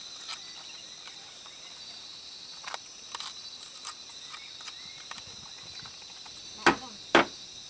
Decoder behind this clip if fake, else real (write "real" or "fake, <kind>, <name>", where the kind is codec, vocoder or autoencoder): real